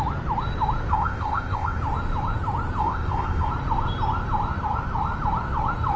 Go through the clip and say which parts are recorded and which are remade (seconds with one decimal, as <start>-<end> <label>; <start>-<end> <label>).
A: 0.0-0.9 recorded; 0.9-1.8 remade; 1.8-2.8 recorded; 2.8-3.5 remade; 3.5-6.0 recorded